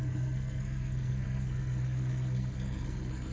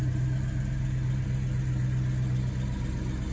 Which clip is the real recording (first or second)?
second